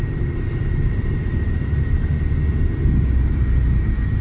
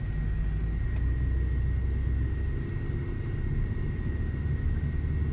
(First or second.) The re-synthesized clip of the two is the first